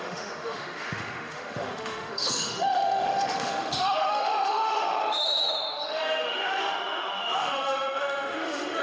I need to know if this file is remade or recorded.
remade